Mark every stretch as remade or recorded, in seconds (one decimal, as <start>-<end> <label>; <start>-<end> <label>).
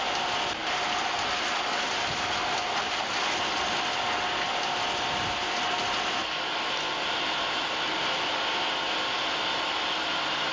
0.0-10.5 recorded